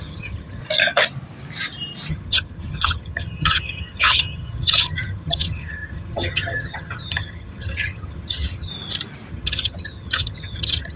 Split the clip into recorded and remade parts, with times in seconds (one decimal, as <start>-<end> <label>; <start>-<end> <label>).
0.0-0.6 remade; 0.6-2.1 recorded; 2.1-8.7 remade; 8.7-9.3 recorded; 9.3-11.0 remade